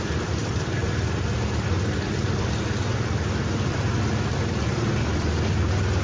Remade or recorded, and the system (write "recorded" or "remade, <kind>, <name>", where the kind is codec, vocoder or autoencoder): recorded